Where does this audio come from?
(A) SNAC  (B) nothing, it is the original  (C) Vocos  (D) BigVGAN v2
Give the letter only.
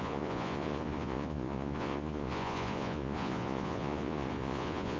C